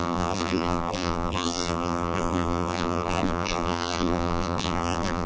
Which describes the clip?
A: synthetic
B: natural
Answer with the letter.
A